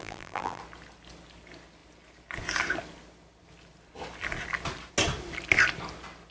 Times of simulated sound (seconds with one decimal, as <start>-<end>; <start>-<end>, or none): 0.0-0.6